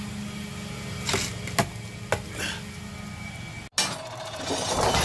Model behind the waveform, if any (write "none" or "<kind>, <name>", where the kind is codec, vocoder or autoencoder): none